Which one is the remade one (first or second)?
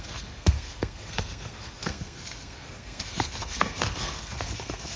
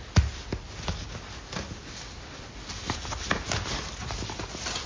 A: first